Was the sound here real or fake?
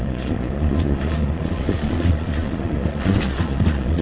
fake